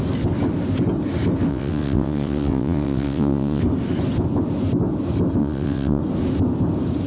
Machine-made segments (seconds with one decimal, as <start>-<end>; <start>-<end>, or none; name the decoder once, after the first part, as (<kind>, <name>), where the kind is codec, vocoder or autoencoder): 1.5-3.6 (vocoder, WaveNeXt); 5.4-6.0